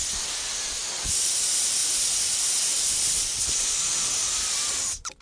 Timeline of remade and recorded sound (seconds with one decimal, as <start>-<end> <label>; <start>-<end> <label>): 0.0-4.2 recorded; 4.2-5.2 remade